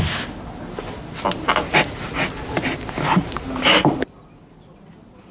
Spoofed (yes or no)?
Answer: no